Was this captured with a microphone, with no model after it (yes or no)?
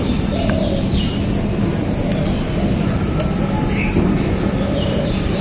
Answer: yes